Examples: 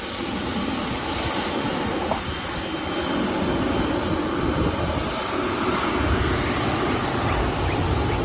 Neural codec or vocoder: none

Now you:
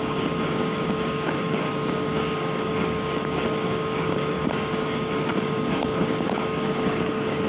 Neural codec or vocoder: codec, DAC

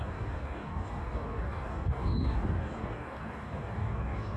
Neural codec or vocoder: codec, DAC